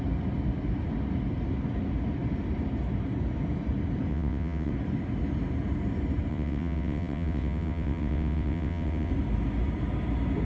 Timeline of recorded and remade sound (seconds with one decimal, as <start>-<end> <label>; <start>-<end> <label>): 0.0-4.1 recorded; 4.1-4.7 remade; 4.7-6.3 recorded; 6.3-9.1 remade; 9.1-10.4 recorded